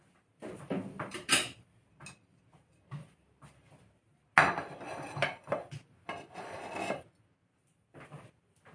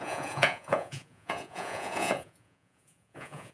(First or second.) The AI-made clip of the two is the second